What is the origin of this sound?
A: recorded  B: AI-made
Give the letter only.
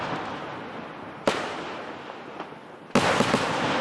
A